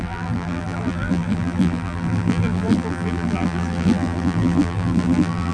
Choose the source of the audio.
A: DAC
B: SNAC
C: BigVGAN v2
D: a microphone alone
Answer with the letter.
C